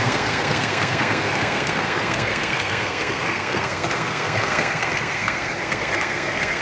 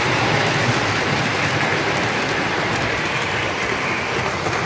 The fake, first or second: first